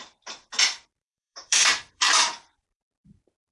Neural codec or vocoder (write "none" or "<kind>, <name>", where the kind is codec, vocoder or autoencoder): vocoder, BigVGAN v2